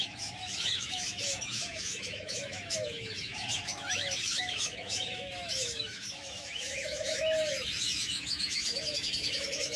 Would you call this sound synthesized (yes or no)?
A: yes